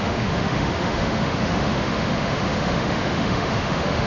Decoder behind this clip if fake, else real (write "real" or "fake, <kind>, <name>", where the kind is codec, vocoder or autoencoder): fake, autoencoder, DAC-VAE